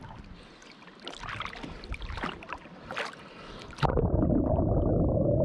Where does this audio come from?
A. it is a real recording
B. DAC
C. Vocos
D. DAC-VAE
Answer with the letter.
A